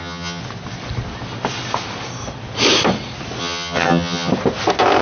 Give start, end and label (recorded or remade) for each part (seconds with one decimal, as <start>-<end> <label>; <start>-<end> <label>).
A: 0.0-0.4 remade; 0.4-3.4 recorded; 3.4-4.3 remade; 4.3-5.0 recorded